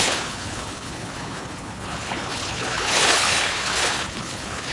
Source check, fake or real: fake